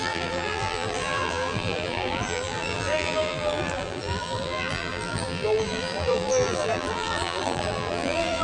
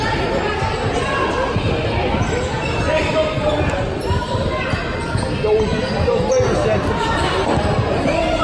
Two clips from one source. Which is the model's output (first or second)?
first